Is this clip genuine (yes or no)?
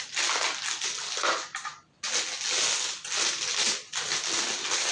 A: yes